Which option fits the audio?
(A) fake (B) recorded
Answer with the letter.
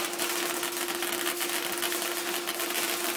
B